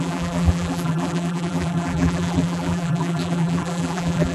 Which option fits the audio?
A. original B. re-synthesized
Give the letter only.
B